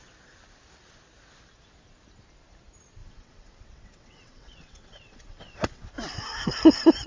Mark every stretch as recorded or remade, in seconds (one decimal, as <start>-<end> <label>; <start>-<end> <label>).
0.0-3.0 recorded; 3.0-5.9 remade; 5.9-7.1 recorded